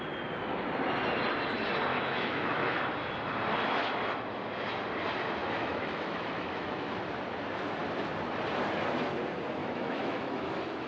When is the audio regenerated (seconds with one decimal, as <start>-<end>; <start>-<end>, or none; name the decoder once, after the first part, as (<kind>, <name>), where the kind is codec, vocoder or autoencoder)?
1.9-2.8 (autoencoder, DAC-VAE); 5.4-6.9; 9.6-10.9